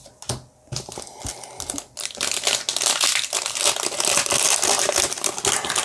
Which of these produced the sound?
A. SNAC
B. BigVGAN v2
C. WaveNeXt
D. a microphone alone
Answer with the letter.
D